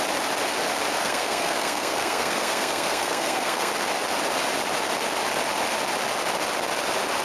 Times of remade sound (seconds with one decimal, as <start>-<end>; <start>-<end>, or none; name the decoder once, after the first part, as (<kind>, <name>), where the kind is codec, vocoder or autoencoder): 1.0-3.7 (codec, SNAC)

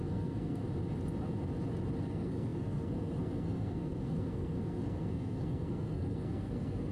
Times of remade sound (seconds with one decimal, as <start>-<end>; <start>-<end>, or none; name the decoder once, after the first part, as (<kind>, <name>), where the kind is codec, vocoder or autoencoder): 0.0-0.6 (codec, SNAC); 2.0-6.9

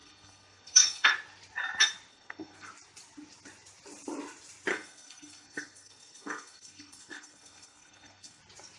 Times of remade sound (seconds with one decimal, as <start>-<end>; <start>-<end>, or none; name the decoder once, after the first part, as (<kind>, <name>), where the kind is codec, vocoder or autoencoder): 0.0-1.1 (codec, SNAC); 2.1-2.7; 4.7-8.4

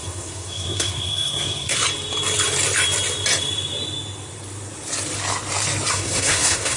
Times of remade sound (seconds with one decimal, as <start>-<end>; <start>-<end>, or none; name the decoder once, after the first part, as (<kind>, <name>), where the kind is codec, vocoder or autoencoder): 0.0-1.8 (codec, SNAC); 5.9-6.8

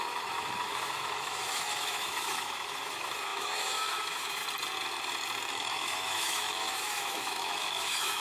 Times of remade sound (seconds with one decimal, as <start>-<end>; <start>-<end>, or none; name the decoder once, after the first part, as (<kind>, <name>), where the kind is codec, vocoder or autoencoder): 0.0-4.4 (autoencoder, DAC-VAE); 5.5-8.2

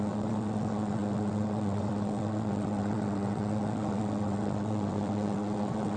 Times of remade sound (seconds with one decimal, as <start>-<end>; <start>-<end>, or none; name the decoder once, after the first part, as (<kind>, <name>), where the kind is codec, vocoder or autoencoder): 0.0-6.0 (vocoder, WaveNeXt)

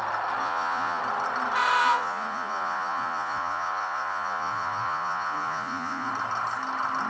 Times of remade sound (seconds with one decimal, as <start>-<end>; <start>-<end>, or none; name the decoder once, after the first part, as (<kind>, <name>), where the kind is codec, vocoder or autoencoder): 0.4-1.0 (vocoder, Vocos); 1.8-6.1